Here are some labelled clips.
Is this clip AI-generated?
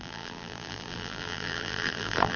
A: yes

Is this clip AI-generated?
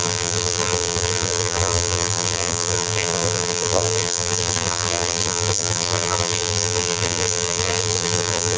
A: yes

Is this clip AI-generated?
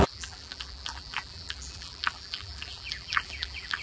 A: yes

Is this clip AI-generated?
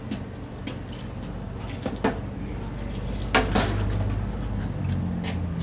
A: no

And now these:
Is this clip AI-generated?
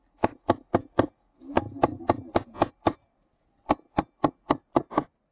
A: no